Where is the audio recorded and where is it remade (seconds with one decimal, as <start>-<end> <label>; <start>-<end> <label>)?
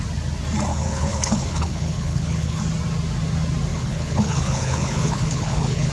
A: 0.0-0.7 recorded; 0.7-2.6 remade; 2.6-3.7 recorded; 3.7-5.9 remade